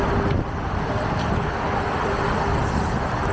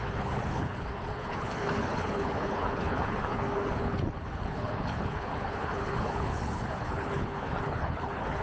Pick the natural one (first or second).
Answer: first